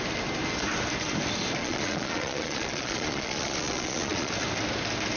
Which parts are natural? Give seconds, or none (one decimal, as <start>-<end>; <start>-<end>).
0.0-1.6; 4.3-5.2